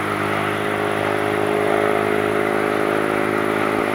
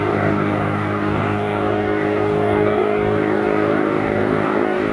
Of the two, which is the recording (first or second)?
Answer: first